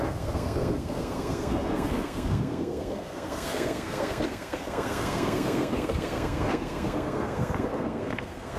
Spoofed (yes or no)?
yes